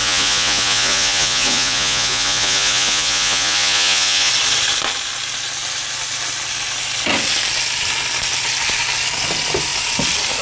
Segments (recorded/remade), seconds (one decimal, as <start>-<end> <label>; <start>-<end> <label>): 0.0-4.3 remade; 4.3-10.4 recorded